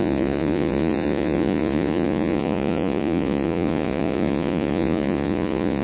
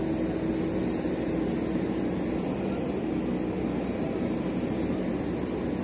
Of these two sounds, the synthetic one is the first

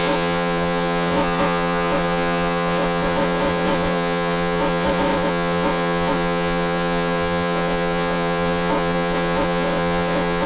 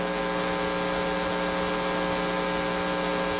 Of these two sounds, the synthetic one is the first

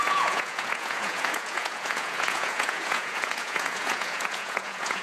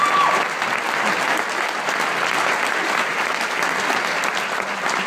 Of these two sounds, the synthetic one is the first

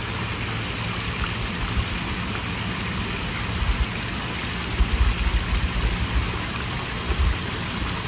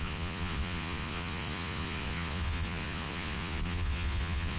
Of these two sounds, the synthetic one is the second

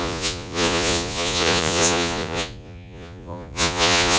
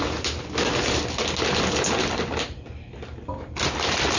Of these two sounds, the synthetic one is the first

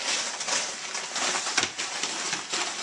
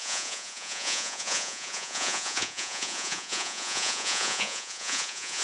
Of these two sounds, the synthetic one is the second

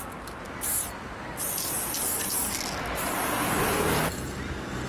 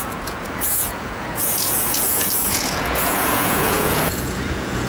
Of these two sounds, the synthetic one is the second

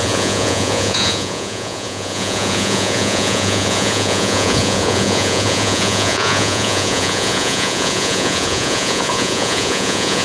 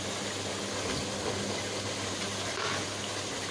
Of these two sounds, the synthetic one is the first